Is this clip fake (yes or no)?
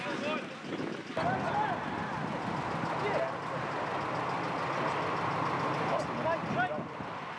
no